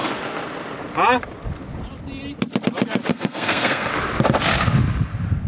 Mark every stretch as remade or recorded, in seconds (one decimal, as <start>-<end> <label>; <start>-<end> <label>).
0.0-3.1 recorded; 3.1-3.9 remade; 3.9-5.5 recorded